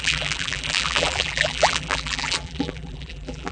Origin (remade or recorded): remade